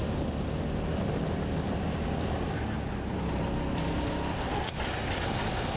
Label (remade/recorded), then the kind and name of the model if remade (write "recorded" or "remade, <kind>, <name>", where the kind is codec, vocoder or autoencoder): recorded